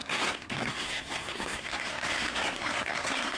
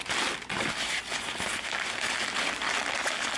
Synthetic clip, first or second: first